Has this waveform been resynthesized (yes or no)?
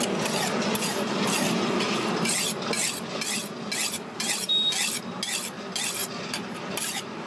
no